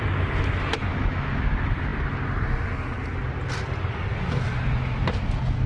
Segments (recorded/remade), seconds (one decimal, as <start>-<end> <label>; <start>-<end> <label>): 0.0-0.9 recorded; 0.9-1.4 remade; 1.4-5.7 recorded